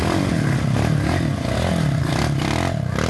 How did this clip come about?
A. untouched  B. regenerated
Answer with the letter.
A